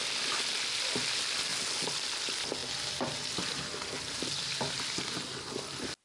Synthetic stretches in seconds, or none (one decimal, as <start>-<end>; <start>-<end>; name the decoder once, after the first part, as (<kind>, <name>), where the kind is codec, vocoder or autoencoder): none

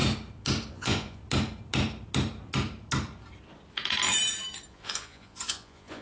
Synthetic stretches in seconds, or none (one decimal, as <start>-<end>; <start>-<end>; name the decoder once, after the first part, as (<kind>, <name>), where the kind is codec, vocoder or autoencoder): 0.7-1.2 (vocoder, Vocos); 4.7-6.0